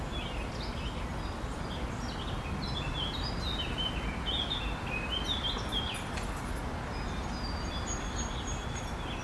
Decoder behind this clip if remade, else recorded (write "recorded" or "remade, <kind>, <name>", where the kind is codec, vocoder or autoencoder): recorded